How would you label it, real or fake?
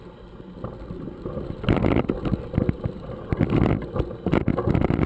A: real